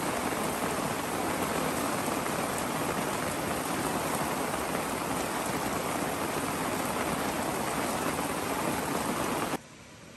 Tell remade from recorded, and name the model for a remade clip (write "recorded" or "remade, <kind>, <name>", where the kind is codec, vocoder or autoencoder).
recorded